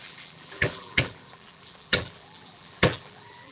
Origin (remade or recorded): remade